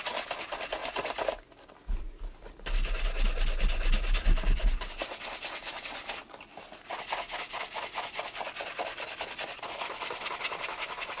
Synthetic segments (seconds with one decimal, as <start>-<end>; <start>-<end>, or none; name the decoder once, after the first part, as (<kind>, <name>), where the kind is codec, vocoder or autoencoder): none